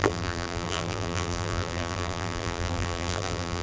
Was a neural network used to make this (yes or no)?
yes